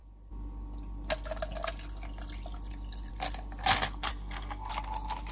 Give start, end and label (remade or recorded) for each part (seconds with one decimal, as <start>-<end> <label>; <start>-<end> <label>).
0.0-4.1 recorded; 4.1-4.7 remade; 4.7-5.3 recorded